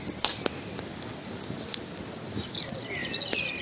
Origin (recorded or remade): recorded